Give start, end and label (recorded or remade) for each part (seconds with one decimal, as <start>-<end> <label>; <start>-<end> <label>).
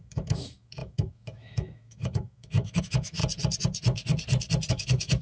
0.0-3.2 remade; 3.2-4.7 recorded; 4.7-5.2 remade